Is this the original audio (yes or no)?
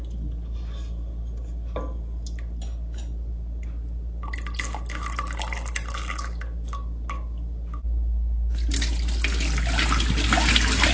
yes